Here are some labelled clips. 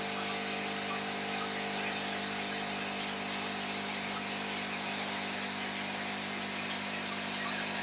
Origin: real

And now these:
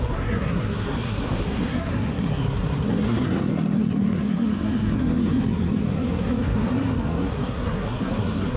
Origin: fake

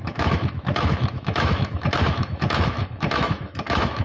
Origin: fake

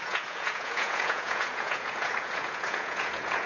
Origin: fake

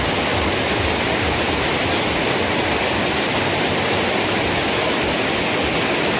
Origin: real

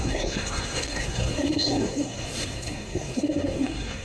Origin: fake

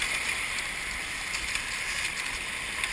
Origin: real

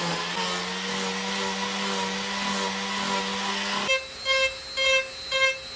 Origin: real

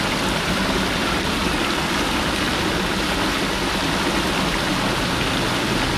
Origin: real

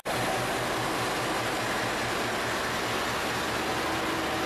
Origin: real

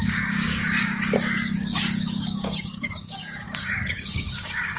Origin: fake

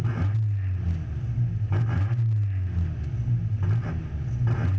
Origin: real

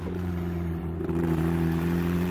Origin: fake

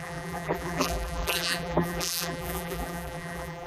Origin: fake